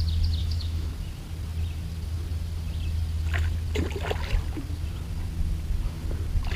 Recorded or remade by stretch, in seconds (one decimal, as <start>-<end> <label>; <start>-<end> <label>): 0.0-0.4 recorded; 0.4-0.9 remade; 0.9-6.6 recorded